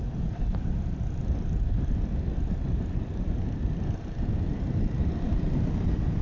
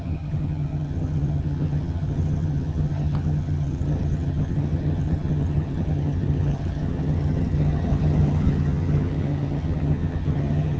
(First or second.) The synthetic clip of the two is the second